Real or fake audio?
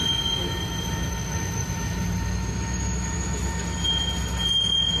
real